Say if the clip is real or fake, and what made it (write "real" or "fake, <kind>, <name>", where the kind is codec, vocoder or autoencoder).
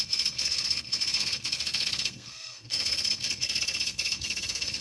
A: fake, codec, SNAC